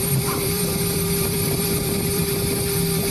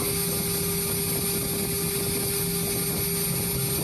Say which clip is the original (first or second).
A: second